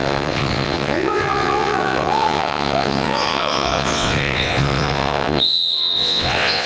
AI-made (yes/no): yes